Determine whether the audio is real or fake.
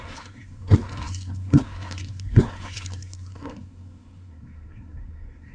fake